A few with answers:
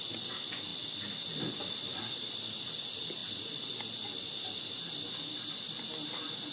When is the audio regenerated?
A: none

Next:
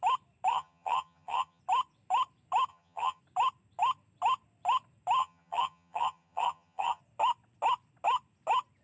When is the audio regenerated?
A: 0.5-1.6 (vocoder, HiFi-GAN); 2.7-3.2; 5.2-7.0

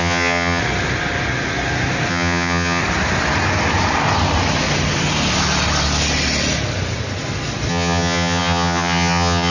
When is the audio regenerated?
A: 0.0-0.6 (vocoder, HiFi-GAN); 2.1-2.8; 7.7-9.5